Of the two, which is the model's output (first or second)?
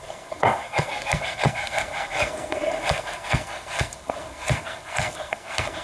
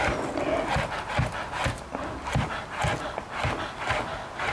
first